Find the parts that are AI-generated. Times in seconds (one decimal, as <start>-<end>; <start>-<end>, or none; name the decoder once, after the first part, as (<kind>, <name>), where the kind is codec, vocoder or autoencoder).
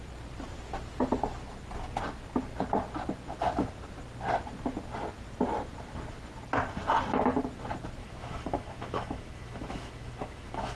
8.0-10.8 (autoencoder, DAC-VAE)